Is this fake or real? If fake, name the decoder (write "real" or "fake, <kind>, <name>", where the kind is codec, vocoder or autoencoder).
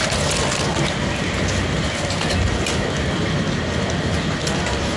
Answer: real